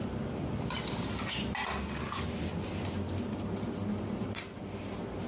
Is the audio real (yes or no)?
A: yes